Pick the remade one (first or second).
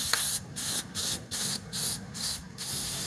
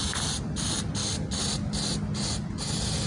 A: first